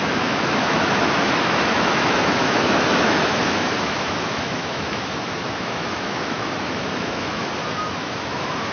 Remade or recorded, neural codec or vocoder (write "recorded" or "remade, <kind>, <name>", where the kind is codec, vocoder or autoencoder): remade, autoencoder, DAC-VAE